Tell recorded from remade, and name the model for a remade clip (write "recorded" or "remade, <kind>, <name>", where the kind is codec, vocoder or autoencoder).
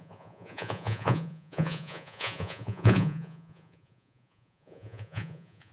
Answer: remade, vocoder, Vocos